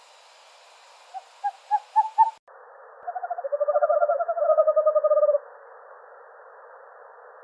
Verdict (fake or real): real